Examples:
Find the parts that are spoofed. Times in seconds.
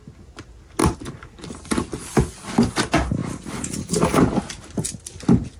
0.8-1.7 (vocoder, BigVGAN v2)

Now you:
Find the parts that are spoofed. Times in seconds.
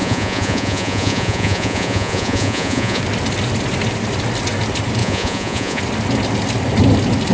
0.0-3.0 (vocoder, Vocos); 5.0-5.8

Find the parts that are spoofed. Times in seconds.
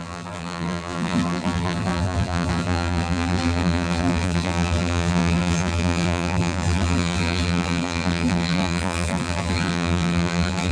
0.0-10.7 (vocoder, BigVGAN v2)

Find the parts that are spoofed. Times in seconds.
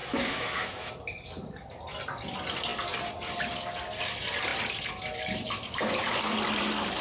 0.0-0.9 (autoencoder, DAC-VAE)